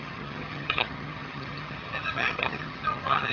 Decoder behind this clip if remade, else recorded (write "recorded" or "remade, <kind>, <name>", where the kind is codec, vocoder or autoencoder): remade, vocoder, HiFi-GAN